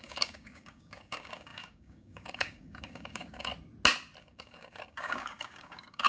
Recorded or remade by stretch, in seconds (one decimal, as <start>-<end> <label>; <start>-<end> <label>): 0.0-3.5 remade; 3.5-4.2 recorded; 4.2-6.1 remade

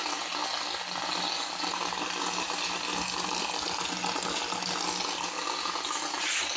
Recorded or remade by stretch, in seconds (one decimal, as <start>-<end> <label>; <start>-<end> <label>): 0.0-6.6 recorded

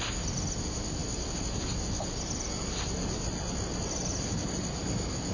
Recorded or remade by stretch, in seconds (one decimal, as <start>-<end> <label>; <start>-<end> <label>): 0.0-5.3 recorded

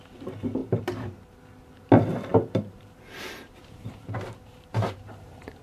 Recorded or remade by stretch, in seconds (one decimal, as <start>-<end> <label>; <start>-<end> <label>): 0.0-0.6 recorded; 0.6-1.4 remade; 1.4-2.3 recorded; 2.3-5.6 remade